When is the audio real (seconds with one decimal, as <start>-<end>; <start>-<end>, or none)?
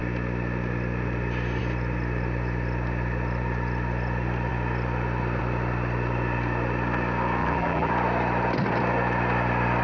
0.0-7.4; 7.9-9.8